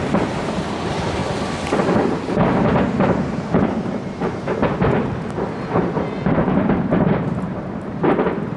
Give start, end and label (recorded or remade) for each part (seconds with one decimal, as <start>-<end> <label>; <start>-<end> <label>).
0.0-1.2 remade; 1.2-1.7 recorded; 1.7-4.6 remade; 4.6-7.2 recorded; 7.2-8.6 remade